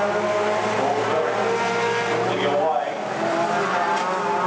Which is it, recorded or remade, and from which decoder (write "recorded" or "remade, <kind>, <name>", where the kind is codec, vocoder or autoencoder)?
recorded